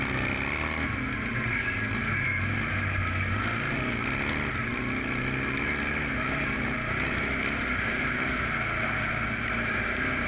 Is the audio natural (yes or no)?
yes